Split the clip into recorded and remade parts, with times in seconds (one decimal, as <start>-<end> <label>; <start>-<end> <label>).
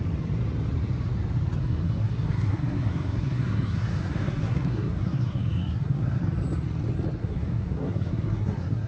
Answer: 0.0-1.6 recorded; 1.6-6.2 remade; 6.2-7.2 recorded; 7.2-8.9 remade